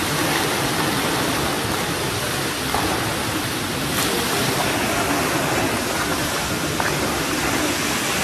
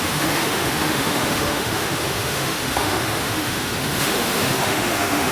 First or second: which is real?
first